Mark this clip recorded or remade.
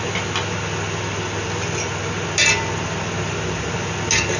recorded